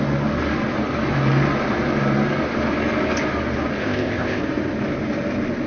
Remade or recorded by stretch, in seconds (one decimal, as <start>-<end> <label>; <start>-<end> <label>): 0.0-3.8 recorded; 3.8-4.4 remade; 4.4-5.7 recorded